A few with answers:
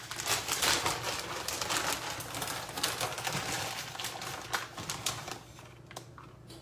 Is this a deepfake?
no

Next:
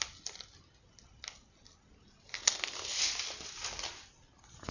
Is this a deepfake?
no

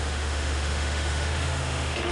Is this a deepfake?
yes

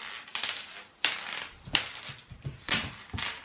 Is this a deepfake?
no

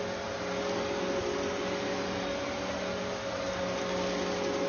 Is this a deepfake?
no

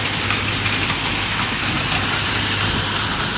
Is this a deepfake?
no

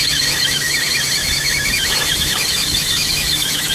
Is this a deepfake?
yes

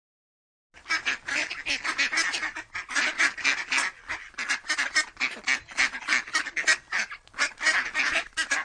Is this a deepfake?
no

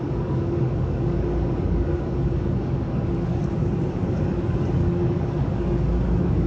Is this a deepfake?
yes